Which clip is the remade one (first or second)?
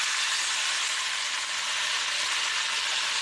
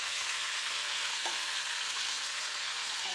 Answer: second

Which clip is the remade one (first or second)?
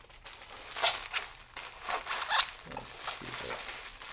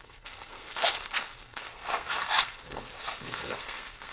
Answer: second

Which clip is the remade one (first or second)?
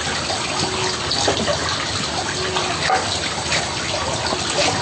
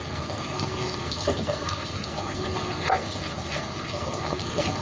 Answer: second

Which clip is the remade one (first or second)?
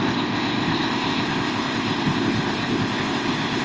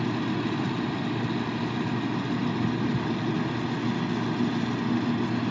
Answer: first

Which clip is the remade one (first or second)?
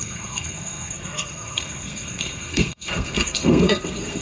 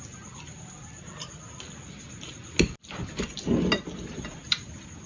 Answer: first